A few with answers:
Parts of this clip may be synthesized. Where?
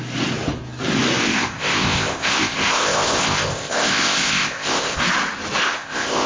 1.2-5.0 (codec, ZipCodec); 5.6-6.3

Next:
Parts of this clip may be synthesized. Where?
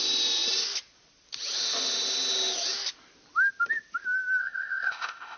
4.4-5.4 (codec, ZipCodec)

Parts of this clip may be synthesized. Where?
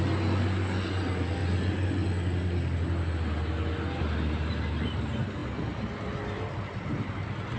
none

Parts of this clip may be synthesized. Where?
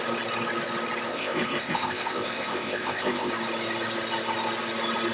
1.1-3.3 (codec, ZipCodec)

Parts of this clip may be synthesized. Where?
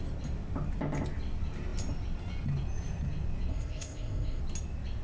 3.5-4.4 (codec, ZipCodec)